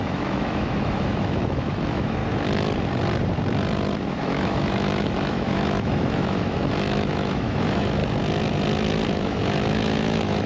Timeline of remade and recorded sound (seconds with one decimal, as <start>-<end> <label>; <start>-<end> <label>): 0.0-2.2 remade; 2.2-4.1 recorded; 4.1-8.0 remade; 8.0-9.1 recorded; 9.1-10.5 remade